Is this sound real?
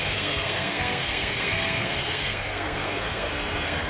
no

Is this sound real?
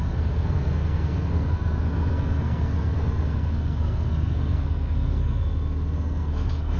no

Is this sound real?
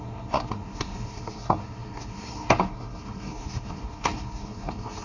no